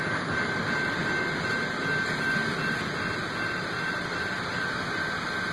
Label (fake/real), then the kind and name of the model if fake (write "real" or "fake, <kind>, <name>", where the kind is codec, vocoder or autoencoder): real